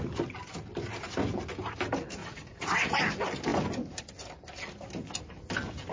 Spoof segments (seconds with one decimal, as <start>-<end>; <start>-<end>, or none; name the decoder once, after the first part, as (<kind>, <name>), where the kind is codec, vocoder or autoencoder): 2.2-3.0 (vocoder, Vocos)